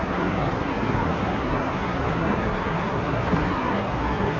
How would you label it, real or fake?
fake